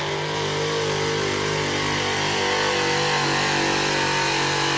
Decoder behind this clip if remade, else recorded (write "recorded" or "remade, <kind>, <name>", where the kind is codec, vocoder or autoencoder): recorded